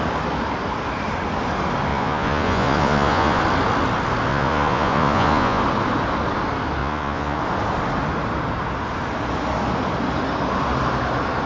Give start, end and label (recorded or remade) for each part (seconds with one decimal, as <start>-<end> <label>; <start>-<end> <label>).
0.0-1.9 recorded; 1.9-3.4 remade; 3.4-4.3 recorded; 4.3-5.6 remade; 5.6-6.8 recorded; 6.8-7.4 remade; 7.4-11.5 recorded